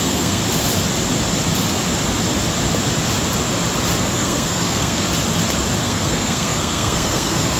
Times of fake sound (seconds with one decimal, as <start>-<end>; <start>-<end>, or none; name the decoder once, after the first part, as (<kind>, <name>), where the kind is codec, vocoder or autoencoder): 0.0-0.4 (codec, SNAC); 4.0-5.1; 5.8-7.6